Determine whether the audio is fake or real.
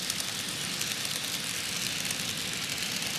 real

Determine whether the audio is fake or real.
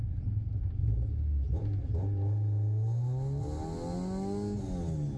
real